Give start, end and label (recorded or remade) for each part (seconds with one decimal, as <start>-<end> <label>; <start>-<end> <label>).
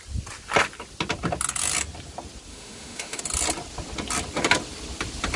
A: 0.0-2.5 recorded; 2.5-3.2 remade; 3.2-5.4 recorded